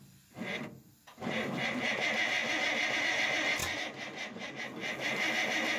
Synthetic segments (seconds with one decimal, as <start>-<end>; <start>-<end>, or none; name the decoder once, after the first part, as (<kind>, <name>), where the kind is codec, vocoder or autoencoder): none